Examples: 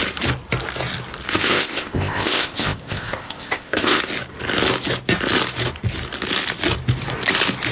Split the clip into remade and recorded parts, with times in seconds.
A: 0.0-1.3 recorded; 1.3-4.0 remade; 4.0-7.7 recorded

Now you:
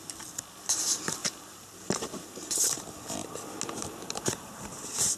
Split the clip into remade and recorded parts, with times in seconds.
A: 0.0-1.2 recorded; 1.2-2.7 remade; 2.7-3.8 recorded; 3.8-5.2 remade

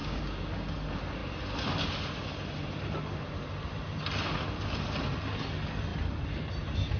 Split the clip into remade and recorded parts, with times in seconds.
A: 0.0-0.7 remade; 0.7-7.0 recorded

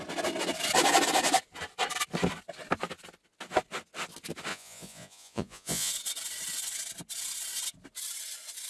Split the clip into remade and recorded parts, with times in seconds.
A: 0.0-4.5 recorded; 4.5-5.9 remade; 5.9-8.7 recorded

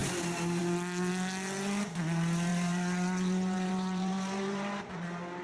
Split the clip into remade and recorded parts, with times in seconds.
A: 0.0-2.5 recorded; 2.5-4.9 remade; 4.9-5.4 recorded